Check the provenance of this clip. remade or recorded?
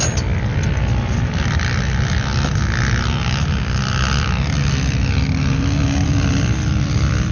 recorded